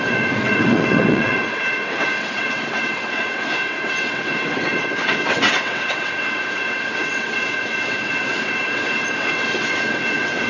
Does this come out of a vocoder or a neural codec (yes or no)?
yes